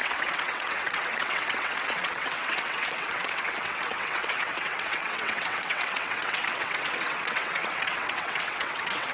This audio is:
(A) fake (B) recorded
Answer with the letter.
A